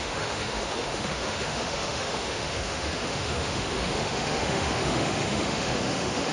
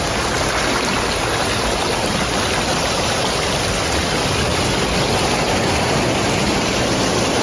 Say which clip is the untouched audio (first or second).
second